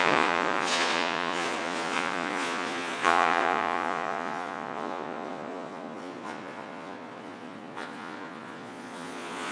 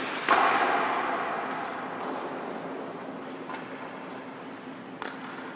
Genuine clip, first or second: second